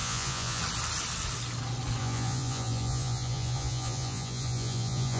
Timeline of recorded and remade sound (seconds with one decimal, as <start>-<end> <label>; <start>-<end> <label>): 0.0-0.6 remade; 0.6-2.0 recorded; 2.0-5.2 remade